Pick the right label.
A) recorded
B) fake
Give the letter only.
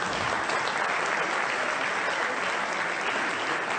A